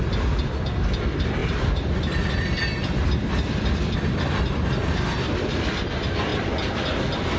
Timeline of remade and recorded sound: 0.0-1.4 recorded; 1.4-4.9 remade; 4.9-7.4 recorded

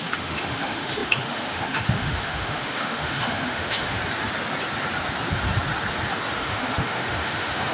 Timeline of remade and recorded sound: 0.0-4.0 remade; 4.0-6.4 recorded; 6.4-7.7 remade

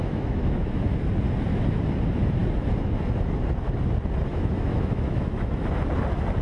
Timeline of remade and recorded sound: 0.0-1.0 remade; 1.0-4.3 recorded; 4.3-5.7 remade; 5.7-6.4 recorded